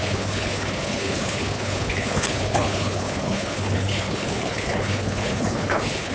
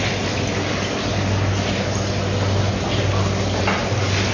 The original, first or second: second